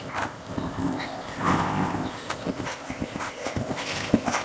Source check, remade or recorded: remade